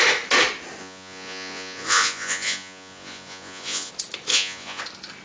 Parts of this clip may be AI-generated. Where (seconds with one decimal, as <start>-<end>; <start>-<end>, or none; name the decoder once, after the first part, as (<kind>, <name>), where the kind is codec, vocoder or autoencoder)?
0.8-3.9 (vocoder, Vocos); 4.3-4.8